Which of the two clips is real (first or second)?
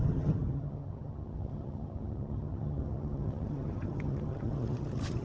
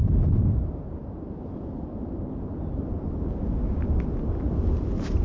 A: second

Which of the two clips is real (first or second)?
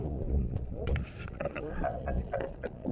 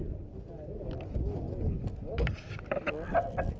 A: second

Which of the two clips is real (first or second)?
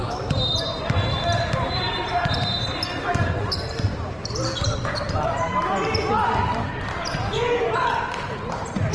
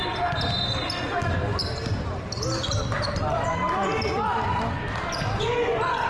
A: second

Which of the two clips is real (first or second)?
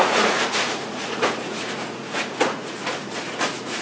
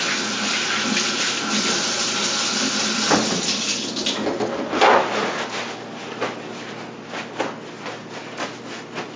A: second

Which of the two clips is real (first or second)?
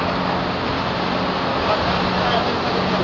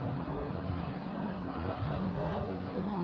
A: first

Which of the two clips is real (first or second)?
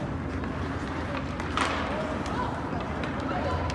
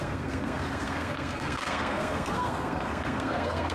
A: first